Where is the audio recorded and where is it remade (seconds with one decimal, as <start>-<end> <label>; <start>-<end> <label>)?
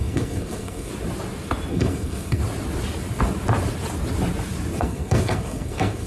0.0-0.9 remade; 0.9-1.7 recorded; 1.7-2.4 remade; 2.4-4.8 recorded; 4.8-6.1 remade